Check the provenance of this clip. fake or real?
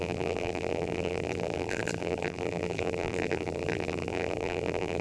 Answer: fake